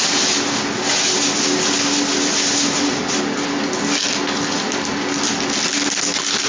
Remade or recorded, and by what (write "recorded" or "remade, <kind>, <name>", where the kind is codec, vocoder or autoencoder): recorded